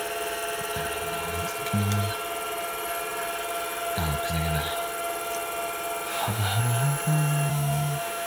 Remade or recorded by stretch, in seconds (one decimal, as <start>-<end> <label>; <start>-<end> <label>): 0.0-6.1 recorded; 6.1-6.6 remade; 6.6-7.5 recorded; 7.5-8.3 remade